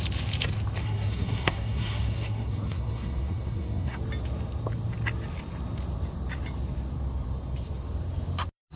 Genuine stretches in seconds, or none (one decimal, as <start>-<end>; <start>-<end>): 0.0-0.8; 4.0-8.8

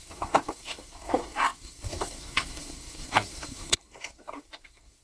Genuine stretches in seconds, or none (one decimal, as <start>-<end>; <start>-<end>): none

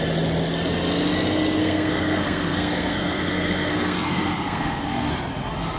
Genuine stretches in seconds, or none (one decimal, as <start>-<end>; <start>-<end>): 0.0-1.6; 5.1-5.8